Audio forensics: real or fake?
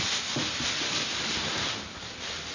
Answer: real